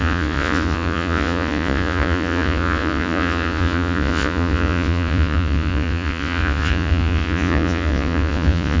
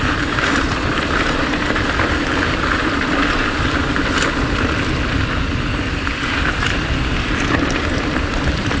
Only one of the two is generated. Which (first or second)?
first